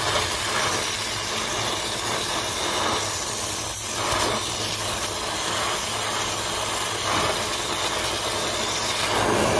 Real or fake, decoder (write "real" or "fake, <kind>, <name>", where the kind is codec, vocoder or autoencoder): real